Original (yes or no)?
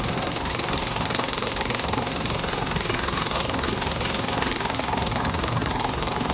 no